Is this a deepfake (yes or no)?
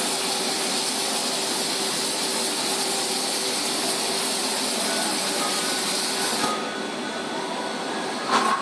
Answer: no